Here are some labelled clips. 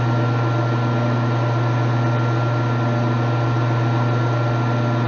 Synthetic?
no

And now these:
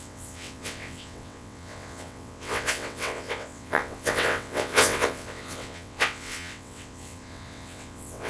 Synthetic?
yes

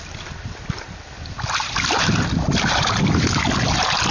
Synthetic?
no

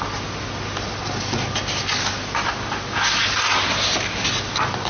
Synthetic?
no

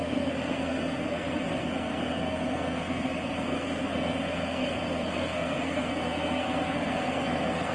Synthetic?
yes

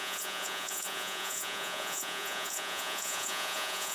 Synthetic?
yes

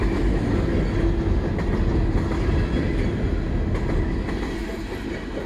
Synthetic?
no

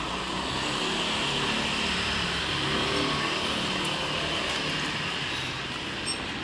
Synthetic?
no